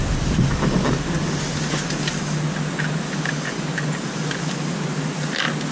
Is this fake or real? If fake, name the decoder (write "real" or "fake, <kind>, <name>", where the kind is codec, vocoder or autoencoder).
real